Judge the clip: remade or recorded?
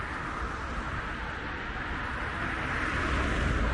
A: recorded